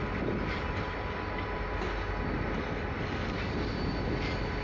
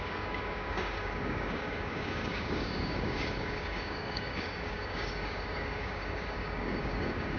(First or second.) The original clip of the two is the first